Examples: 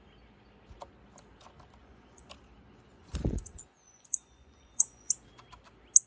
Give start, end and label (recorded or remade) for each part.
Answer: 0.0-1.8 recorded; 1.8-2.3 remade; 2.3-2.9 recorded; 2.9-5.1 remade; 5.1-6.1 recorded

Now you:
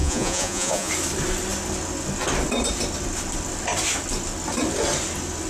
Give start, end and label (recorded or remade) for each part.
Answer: 0.0-0.9 remade; 0.9-5.5 recorded

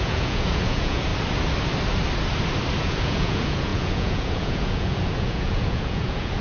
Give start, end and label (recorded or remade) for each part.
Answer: 0.0-1.1 remade; 1.1-2.8 recorded; 2.8-6.4 remade

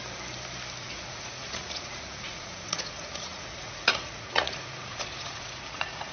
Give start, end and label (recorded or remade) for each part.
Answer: 0.0-0.8 recorded; 0.8-6.1 remade